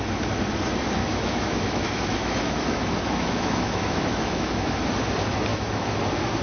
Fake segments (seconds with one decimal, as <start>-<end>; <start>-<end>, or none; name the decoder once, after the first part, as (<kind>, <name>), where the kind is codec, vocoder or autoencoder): 1.0-4.8 (autoencoder, DAC-VAE); 5.5-6.0